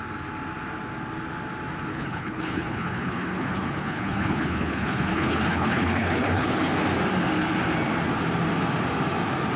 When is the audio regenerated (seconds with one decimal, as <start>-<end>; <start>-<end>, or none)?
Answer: 1.9-6.7